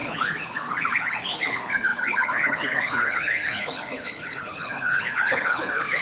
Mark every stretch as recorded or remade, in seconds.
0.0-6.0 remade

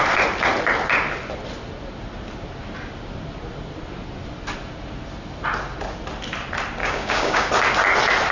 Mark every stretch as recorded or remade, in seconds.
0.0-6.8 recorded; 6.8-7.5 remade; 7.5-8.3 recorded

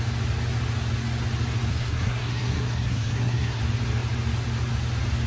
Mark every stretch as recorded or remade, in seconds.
0.0-1.7 recorded; 1.7-3.6 remade; 3.6-5.3 recorded

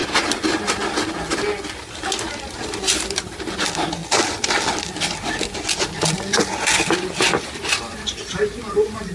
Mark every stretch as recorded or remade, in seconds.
0.0-2.7 recorded; 2.7-9.1 remade

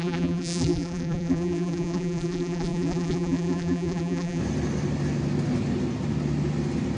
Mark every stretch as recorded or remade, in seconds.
0.0-4.4 remade; 4.4-7.0 recorded

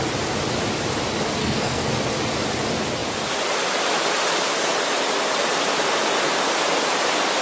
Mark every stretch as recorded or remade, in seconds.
0.0-1.4 recorded; 1.4-1.9 remade; 1.9-7.4 recorded